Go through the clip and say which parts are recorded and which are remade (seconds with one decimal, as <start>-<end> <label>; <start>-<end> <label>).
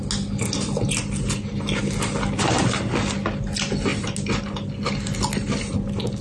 0.0-6.2 recorded